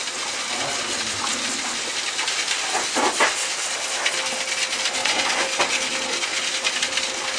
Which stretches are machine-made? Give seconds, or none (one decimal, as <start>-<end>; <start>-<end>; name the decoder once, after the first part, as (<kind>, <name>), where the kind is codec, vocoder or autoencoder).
5.0-5.6 (vocoder, Vocos)